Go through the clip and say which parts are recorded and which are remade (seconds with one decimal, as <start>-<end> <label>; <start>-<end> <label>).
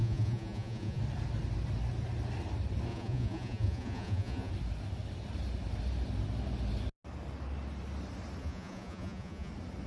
0.0-1.0 remade; 1.0-2.9 recorded; 2.9-4.5 remade; 4.5-8.4 recorded; 8.4-9.5 remade; 9.5-9.9 recorded